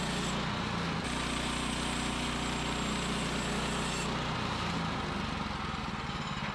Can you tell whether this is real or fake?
real